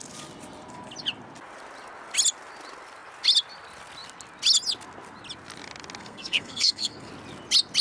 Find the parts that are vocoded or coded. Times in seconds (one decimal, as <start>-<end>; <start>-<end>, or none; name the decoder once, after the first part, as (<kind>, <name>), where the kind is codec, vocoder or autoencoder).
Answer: 6.0-7.1 (codec, SNAC)